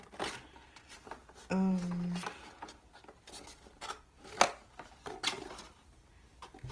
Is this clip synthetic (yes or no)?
no